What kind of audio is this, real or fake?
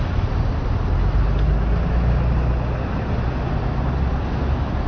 real